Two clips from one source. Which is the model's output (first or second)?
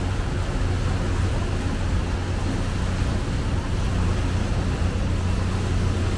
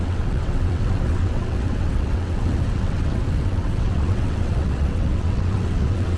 second